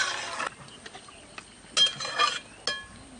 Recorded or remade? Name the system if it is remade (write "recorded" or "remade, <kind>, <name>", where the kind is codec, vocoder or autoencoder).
recorded